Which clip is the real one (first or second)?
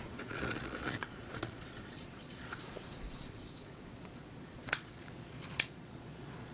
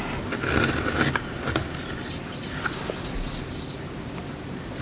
second